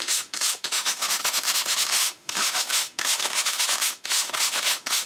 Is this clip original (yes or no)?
no